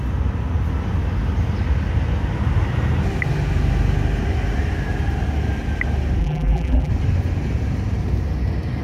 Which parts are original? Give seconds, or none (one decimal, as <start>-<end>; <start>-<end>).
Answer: 0.0-6.2; 6.9-8.8